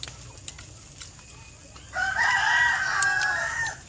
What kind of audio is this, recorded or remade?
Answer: recorded